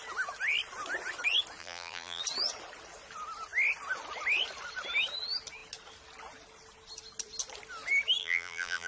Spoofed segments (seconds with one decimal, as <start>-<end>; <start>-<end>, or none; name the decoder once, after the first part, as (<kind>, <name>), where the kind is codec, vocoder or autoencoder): 1.6-2.2 (vocoder, BigVGAN v2); 8.2-8.9